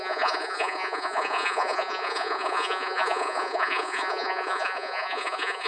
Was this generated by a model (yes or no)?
yes